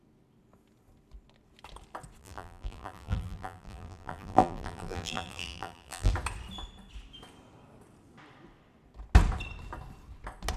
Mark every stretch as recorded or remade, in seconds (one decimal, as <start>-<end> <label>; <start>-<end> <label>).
0.0-2.2 recorded; 2.2-6.1 remade; 6.1-10.6 recorded